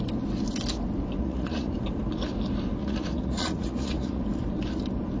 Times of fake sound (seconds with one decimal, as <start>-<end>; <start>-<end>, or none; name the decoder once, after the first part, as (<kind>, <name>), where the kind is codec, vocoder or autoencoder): 1.2-1.7 (vocoder, Vocos); 2.8-4.2